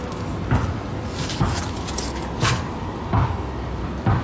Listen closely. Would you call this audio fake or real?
real